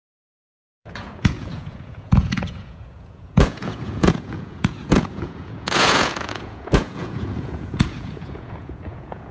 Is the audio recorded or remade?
remade